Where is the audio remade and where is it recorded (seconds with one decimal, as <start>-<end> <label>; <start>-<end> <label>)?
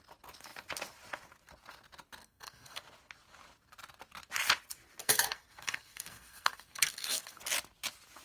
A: 0.0-2.2 recorded; 2.2-2.8 remade; 2.8-5.0 recorded; 5.0-7.4 remade; 7.4-8.2 recorded